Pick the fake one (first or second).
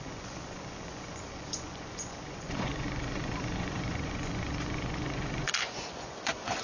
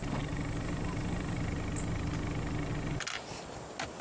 first